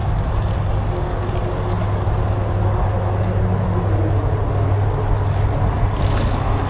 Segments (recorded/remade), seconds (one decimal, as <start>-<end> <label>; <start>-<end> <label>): 0.0-6.7 recorded

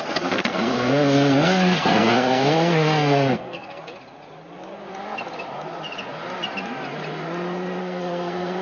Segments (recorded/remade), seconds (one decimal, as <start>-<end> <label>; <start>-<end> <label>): 0.0-3.9 remade; 3.9-7.8 recorded; 7.8-8.6 remade

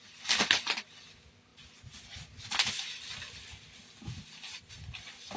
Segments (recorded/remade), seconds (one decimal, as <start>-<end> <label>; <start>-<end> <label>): 0.0-5.4 recorded

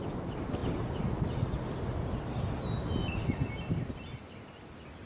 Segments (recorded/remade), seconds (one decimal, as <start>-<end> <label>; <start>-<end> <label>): 0.0-5.1 recorded

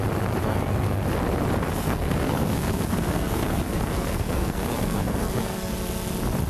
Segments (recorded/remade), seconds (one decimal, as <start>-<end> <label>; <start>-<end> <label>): 0.0-0.4 recorded; 0.4-1.0 remade; 1.0-1.8 recorded; 1.8-5.7 remade; 5.7-6.5 recorded

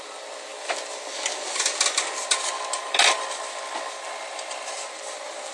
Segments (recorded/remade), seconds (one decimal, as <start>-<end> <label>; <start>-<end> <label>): 0.0-5.5 recorded

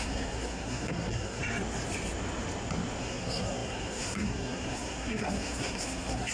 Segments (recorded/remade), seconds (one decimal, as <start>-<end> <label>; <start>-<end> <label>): 0.0-1.4 remade; 1.4-3.0 recorded; 3.0-6.3 remade